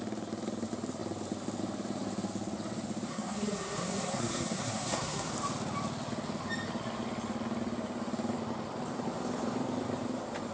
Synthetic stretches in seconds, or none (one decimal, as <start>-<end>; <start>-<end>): 3.1-5.3